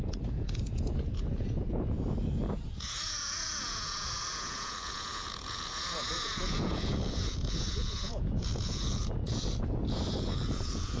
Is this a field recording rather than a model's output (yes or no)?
no